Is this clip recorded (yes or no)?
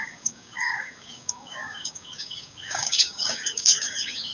no